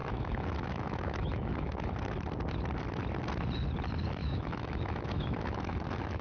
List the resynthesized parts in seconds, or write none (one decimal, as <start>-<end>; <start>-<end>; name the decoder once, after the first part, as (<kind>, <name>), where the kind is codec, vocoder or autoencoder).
0.0-1.9 (autoencoder, DAC-VAE); 4.2-6.2